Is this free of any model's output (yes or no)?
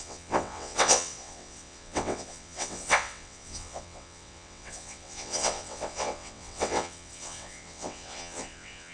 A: no